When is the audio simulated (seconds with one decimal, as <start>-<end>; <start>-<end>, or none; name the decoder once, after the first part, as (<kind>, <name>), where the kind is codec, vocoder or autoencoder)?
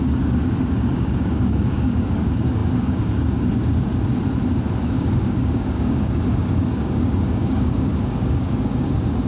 0.0-3.9 (codec, DAC); 4.8-9.3